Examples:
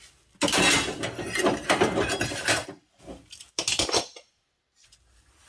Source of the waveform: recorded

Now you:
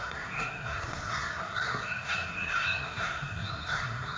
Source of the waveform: remade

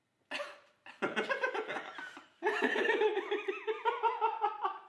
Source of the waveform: recorded